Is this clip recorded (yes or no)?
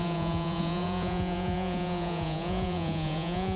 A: no